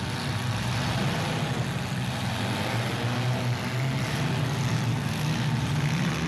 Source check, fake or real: real